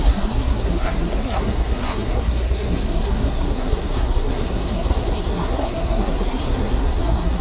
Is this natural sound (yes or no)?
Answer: no